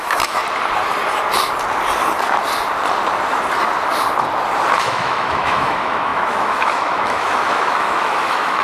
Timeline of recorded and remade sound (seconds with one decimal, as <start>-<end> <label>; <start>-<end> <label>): 0.0-0.4 remade; 0.4-4.8 recorded; 4.8-8.6 remade